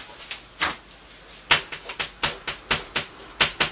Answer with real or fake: real